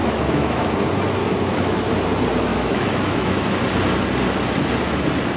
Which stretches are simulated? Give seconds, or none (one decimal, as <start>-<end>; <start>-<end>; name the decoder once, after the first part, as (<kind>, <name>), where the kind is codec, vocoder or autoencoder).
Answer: 0.0-0.7 (autoencoder, DAC-VAE); 1.2-1.9; 2.5-3.5